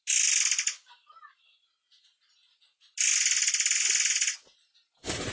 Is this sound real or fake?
real